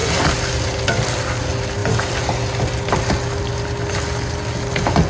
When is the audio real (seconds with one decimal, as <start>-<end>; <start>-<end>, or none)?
0.0-5.1